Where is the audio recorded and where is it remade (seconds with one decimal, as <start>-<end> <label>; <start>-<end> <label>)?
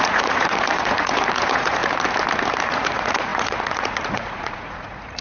0.0-1.8 remade; 1.8-2.6 recorded; 2.6-5.2 remade